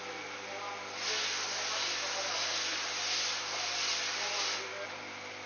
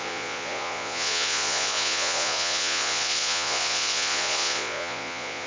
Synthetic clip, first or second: second